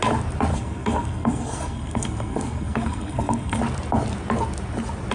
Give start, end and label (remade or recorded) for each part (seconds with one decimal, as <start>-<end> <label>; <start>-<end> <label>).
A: 0.0-0.5 recorded; 0.5-3.6 remade; 3.6-5.1 recorded